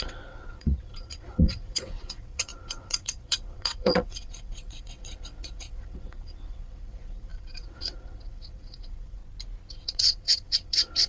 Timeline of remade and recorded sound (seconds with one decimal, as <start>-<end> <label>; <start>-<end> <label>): 0.0-9.2 remade; 9.2-9.7 recorded; 9.7-11.1 remade